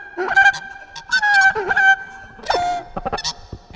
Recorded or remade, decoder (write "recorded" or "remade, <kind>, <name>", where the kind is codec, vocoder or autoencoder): recorded